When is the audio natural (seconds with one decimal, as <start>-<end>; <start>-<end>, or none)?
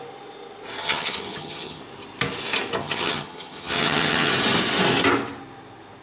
0.0-0.8; 1.8-2.8; 4.3-6.0